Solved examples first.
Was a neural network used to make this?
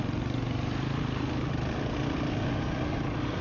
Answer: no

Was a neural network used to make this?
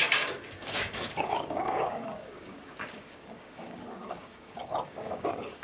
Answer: yes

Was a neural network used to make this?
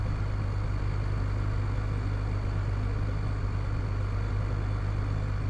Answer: no